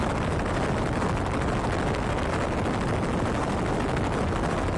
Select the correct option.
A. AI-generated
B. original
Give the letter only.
B